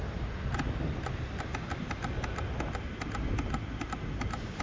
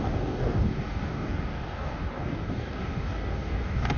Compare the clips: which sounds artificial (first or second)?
second